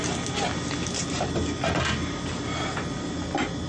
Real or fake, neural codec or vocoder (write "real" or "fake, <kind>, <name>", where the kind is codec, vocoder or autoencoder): real